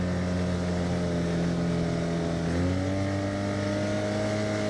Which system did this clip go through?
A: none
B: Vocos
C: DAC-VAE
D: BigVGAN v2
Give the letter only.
A